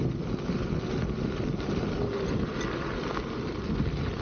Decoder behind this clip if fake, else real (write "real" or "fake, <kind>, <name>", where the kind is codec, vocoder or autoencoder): real